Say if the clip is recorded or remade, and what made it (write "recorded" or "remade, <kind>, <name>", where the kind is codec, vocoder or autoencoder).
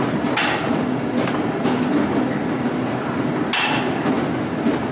recorded